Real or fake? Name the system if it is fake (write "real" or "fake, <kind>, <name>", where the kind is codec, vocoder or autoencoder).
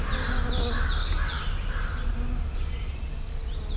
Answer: real